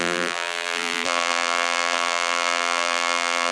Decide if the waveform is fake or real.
fake